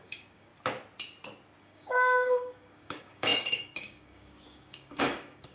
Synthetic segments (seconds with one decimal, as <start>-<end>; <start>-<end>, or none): 0.0-0.5; 1.6-5.5

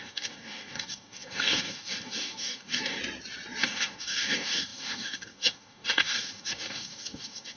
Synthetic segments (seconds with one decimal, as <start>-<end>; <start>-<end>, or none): 0.0-3.0; 3.6-7.6

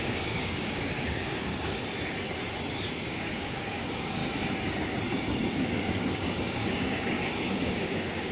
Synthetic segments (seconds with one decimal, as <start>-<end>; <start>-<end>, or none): 0.0-1.8; 3.1-4.2; 5.5-8.3

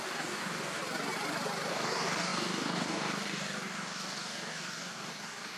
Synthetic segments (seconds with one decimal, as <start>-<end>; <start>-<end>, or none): 0.0-0.8; 1.7-5.6

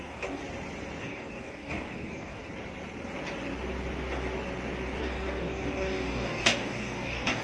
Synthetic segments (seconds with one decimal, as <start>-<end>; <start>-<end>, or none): 0.0-0.4; 1.0-2.4; 5.0-7.4

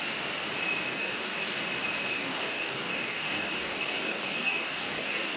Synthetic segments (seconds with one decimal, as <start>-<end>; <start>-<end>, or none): 0.9-1.6; 2.1-5.4

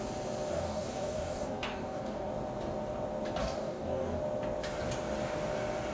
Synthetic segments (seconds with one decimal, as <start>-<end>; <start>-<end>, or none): 0.5-2.3; 3.4-4.2